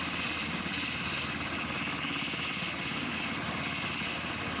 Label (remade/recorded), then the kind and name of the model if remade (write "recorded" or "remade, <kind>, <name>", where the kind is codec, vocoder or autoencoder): recorded